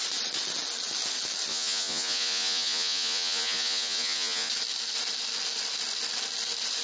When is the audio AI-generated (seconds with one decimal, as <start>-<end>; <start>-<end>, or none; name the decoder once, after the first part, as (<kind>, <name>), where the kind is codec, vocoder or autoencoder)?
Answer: 1.5-4.5 (vocoder, Vocos)